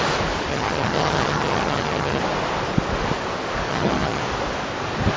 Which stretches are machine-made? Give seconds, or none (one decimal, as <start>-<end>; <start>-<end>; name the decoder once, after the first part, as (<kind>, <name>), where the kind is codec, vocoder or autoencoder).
0.5-2.2 (vocoder, HiFi-GAN); 3.7-4.2